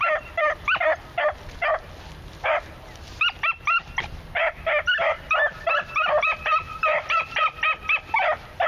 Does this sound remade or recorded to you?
recorded